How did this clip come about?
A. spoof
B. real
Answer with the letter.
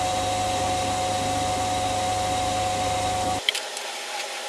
B